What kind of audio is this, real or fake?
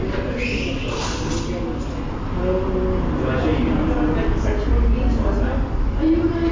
real